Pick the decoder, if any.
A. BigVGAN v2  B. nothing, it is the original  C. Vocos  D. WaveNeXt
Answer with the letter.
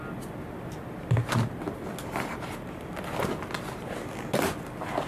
B